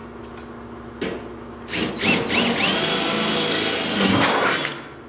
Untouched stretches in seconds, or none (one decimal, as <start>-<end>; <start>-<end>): 0.0-5.1